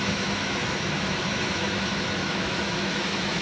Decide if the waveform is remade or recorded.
remade